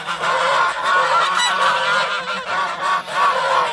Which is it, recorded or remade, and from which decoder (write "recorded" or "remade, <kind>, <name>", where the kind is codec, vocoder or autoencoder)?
recorded